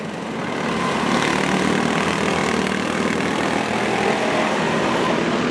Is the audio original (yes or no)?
yes